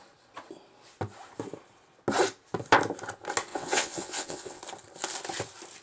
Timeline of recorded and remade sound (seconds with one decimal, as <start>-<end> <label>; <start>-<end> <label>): 0.0-3.5 recorded; 3.5-4.6 remade; 4.6-5.8 recorded